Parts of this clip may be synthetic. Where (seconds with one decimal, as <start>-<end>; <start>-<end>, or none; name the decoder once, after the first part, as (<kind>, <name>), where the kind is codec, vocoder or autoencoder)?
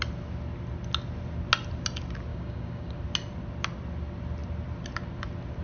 2.3-3.0 (codec, DAC)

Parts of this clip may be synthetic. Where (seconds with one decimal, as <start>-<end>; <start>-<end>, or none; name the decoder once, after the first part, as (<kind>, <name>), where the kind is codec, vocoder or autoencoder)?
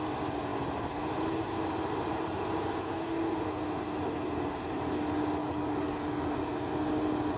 5.4-6.3 (codec, DAC)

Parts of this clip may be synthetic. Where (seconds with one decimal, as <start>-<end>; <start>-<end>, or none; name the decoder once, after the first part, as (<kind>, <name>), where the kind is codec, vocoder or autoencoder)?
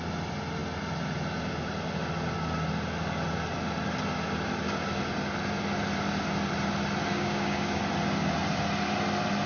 7.1-7.8 (codec, DAC)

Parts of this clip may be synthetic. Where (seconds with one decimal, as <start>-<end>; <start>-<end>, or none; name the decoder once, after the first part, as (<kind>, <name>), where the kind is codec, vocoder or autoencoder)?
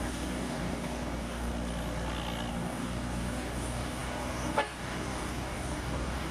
0.0-1.5 (codec, DAC); 2.5-6.3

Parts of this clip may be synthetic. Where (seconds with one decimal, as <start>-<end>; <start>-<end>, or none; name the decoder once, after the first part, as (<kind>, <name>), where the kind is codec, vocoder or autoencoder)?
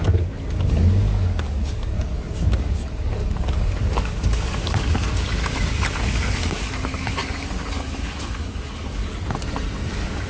0.0-9.0 (codec, DAC); 9.9-10.3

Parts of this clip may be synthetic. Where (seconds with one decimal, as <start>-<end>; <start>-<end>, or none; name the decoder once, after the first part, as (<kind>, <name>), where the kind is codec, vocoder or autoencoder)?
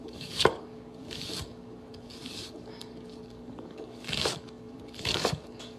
0.0-5.8 (codec, DAC)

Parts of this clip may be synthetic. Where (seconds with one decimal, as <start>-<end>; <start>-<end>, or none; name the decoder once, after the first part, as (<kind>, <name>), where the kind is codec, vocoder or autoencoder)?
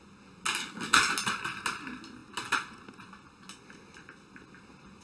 0.6-1.1 (codec, DAC)